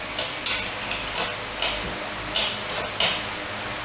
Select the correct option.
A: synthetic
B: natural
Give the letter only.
B